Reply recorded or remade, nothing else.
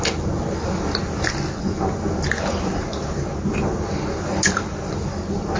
recorded